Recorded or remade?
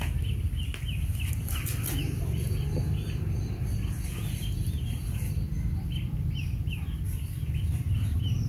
recorded